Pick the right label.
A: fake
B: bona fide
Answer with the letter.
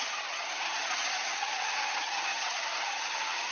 A